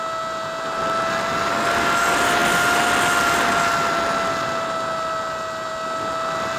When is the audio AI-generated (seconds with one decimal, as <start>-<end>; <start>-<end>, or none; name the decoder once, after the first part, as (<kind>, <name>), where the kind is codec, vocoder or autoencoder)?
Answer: none